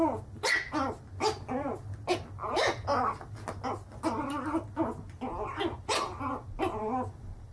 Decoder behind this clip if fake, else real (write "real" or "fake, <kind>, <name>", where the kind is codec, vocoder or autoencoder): real